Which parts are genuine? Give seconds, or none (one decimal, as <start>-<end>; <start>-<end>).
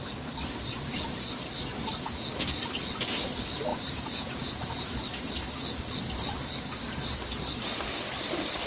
0.0-3.7; 4.9-8.7